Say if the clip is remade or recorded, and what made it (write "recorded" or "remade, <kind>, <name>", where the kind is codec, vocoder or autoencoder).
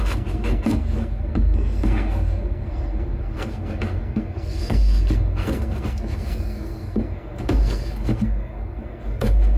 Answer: remade, codec, SNAC